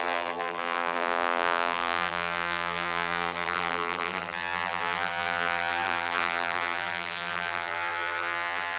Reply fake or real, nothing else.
fake